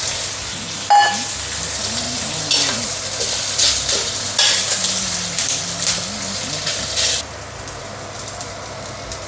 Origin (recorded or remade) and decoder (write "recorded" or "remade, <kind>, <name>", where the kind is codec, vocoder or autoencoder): recorded